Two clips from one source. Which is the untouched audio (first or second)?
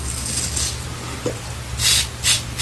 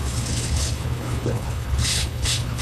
first